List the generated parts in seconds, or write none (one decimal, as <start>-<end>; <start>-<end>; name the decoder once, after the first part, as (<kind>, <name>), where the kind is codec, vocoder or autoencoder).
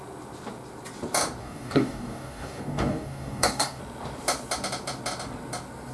1.4-3.8 (codec, DAC)